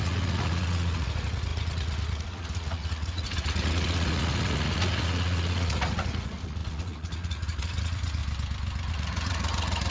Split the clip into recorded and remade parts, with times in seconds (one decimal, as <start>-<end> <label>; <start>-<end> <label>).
0.0-8.2 remade; 8.2-8.9 recorded; 8.9-9.9 remade